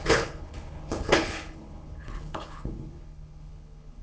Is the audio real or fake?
fake